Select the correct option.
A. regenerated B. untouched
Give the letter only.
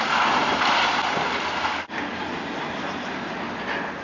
B